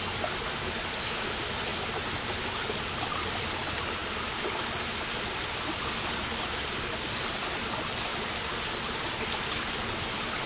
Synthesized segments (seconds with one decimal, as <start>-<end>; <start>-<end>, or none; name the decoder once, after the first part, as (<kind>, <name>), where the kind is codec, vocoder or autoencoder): none